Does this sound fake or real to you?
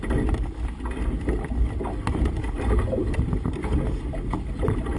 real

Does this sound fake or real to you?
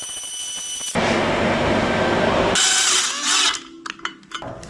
real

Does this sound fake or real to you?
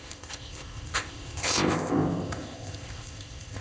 fake